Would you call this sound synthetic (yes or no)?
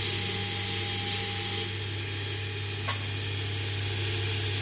no